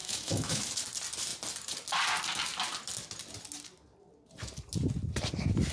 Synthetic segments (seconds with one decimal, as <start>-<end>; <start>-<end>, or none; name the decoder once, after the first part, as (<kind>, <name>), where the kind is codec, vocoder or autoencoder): 0.0-0.6 (autoencoder, DAC-VAE)